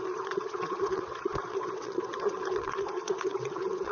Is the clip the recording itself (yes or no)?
no